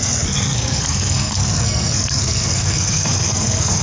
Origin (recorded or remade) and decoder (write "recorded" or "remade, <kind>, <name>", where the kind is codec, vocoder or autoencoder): remade, codec, SNAC